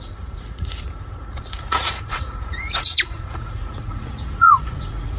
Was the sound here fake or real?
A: fake